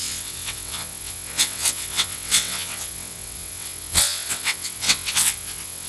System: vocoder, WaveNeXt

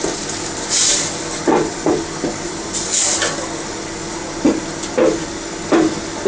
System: none